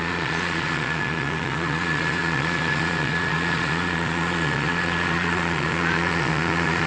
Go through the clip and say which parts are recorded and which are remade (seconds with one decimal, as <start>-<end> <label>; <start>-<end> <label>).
0.0-6.9 remade